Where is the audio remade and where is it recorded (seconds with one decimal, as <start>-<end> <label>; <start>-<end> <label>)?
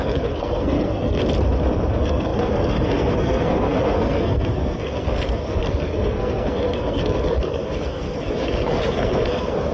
0.0-1.2 remade; 1.2-1.9 recorded; 1.9-9.7 remade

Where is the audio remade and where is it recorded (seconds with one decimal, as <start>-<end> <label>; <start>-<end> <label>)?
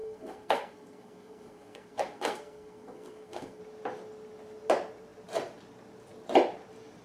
0.0-3.6 remade; 3.6-7.0 recorded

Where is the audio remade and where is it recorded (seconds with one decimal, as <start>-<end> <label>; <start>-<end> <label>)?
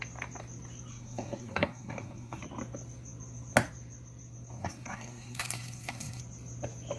0.0-0.9 recorded; 0.9-2.4 remade; 2.4-4.6 recorded; 4.6-6.2 remade; 6.2-7.0 recorded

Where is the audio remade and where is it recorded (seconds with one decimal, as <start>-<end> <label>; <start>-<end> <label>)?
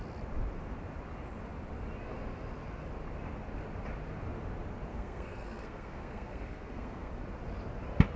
0.0-4.9 recorded; 4.9-7.1 remade; 7.1-8.2 recorded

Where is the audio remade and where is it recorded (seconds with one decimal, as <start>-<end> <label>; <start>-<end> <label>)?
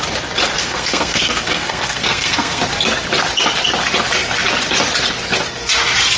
0.0-0.6 recorded; 0.6-2.6 remade; 2.6-6.2 recorded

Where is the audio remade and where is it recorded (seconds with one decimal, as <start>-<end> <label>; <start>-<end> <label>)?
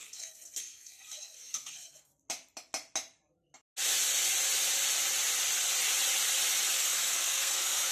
0.0-2.1 remade; 2.1-6.8 recorded; 6.8-7.9 remade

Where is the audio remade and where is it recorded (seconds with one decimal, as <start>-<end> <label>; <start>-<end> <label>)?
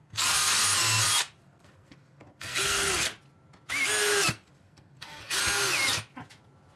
0.0-0.6 remade; 0.6-1.4 recorded; 1.4-3.1 remade; 3.1-4.3 recorded; 4.3-5.4 remade; 5.4-6.8 recorded